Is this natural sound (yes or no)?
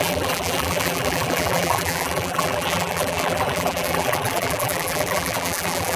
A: no